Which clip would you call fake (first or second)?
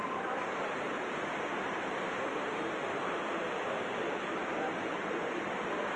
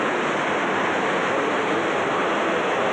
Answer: first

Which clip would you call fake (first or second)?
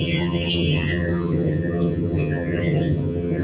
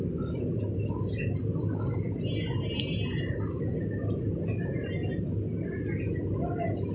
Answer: first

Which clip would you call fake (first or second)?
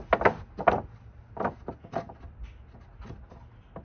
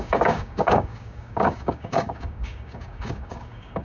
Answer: second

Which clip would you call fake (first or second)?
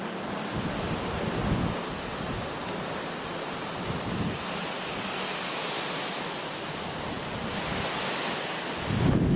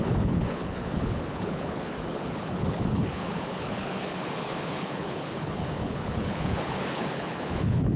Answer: second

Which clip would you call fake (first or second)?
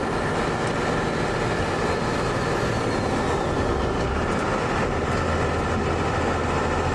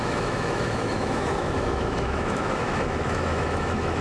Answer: second